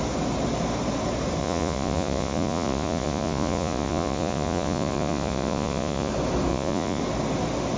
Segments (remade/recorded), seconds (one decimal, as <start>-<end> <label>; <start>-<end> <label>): 0.0-1.4 recorded; 1.4-6.1 remade; 6.1-6.5 recorded; 6.5-7.0 remade; 7.0-7.8 recorded